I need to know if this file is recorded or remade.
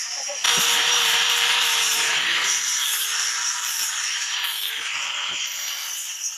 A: remade